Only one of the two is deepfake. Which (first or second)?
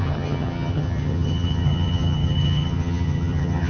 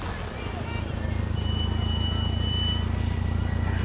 first